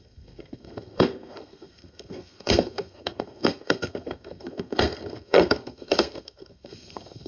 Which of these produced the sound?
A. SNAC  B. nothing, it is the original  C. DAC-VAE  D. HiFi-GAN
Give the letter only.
A